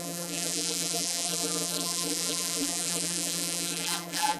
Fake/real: fake